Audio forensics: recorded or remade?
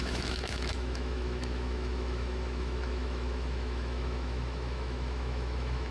remade